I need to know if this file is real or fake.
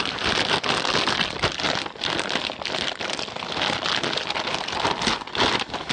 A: real